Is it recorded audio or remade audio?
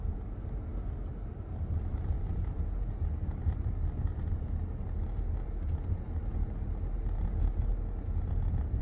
recorded